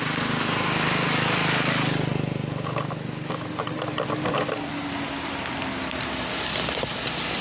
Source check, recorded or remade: recorded